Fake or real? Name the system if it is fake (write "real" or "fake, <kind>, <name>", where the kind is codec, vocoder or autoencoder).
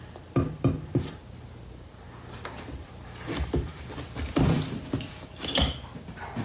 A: real